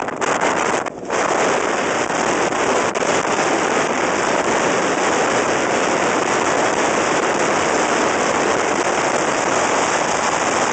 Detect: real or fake real